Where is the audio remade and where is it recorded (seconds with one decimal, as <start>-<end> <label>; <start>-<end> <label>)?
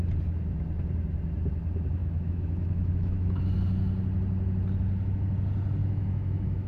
0.0-2.0 recorded; 2.0-3.4 remade; 3.4-5.8 recorded; 5.8-6.7 remade